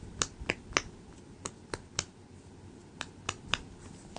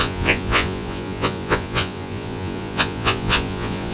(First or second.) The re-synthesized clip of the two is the second